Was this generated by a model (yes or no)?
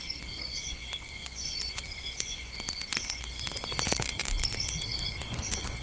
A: yes